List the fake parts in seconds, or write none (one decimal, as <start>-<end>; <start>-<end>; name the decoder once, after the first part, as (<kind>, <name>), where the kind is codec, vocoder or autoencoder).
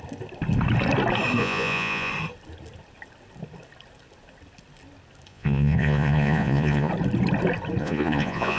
1.4-2.1 (vocoder, Vocos); 5.3-6.9; 7.8-8.6